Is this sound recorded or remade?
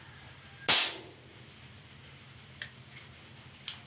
recorded